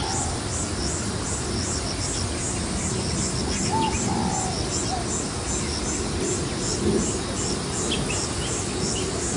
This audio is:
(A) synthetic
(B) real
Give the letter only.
B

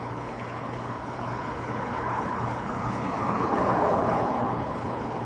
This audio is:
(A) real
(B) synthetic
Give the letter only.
B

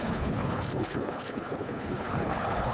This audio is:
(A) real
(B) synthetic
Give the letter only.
B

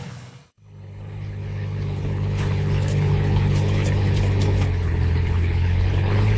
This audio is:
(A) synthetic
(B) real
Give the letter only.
A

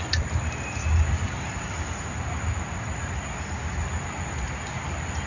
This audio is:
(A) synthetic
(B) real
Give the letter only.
B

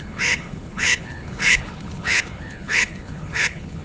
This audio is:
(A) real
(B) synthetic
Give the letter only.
B